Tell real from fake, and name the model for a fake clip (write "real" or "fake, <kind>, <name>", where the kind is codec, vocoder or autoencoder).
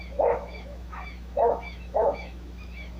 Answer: fake, autoencoder, DAC-VAE